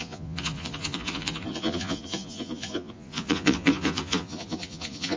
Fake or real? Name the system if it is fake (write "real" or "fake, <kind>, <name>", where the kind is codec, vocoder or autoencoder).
fake, vocoder, Vocos